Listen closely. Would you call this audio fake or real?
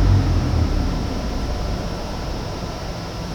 real